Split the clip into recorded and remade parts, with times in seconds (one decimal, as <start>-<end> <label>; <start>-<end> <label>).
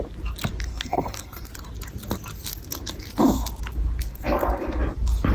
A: 0.0-0.7 recorded; 0.7-1.5 remade; 1.5-4.1 recorded; 4.1-4.8 remade; 4.8-5.3 recorded